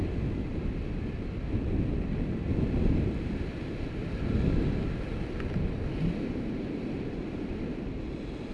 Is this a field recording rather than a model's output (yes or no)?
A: yes